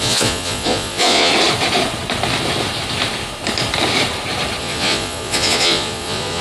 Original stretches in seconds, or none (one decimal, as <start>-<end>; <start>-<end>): 1.3-4.6